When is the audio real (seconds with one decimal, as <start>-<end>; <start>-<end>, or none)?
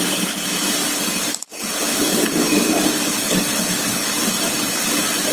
0.0-5.3